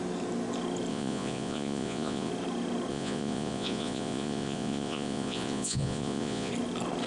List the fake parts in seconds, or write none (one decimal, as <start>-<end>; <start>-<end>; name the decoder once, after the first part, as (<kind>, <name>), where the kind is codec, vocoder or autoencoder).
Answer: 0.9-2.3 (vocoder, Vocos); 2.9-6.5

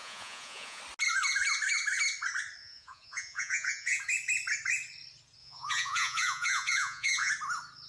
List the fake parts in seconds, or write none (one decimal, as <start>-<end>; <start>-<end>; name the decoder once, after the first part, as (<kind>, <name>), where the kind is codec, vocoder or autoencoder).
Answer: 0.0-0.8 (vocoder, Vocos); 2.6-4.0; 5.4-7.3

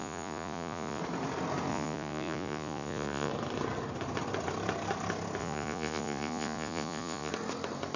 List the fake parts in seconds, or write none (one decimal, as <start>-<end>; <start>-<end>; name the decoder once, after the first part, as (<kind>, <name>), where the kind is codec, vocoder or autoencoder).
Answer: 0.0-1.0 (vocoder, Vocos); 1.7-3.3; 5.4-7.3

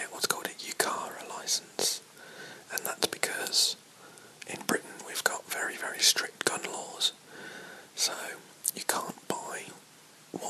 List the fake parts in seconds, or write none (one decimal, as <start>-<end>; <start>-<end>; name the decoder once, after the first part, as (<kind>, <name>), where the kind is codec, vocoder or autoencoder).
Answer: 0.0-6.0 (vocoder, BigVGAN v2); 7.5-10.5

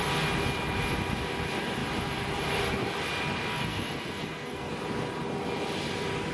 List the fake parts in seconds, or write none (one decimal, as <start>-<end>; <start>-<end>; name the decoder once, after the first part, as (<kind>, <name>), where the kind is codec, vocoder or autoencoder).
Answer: 3.5-4.7 (codec, SNAC)